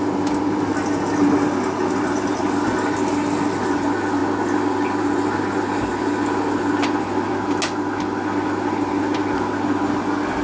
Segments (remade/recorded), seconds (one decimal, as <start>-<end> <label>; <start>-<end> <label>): 0.0-10.4 recorded